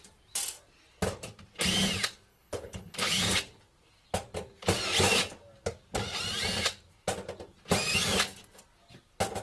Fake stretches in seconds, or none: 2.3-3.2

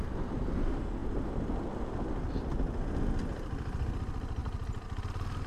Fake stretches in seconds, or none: none